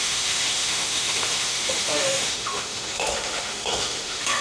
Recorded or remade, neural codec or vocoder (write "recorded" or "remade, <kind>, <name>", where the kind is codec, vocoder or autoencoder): remade, autoencoder, DAC-VAE